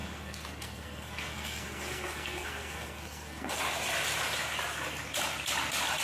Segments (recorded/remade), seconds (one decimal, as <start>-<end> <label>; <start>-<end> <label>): 0.0-3.6 remade; 3.6-6.0 recorded